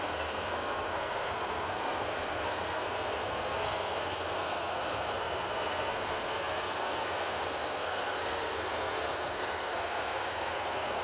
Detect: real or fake fake